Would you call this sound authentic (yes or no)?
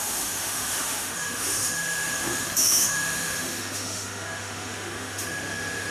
no